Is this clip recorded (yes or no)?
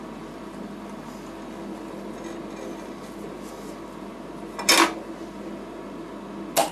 yes